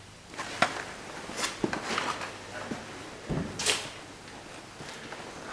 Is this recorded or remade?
recorded